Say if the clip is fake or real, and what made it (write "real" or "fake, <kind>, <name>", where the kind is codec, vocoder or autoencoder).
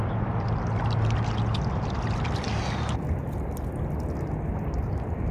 real